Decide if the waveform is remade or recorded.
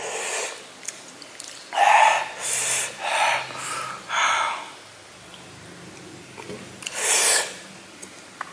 recorded